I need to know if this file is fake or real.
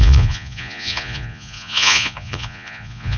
fake